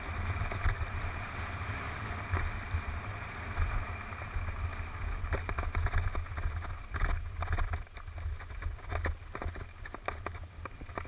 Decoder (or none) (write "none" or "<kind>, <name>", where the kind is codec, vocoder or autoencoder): none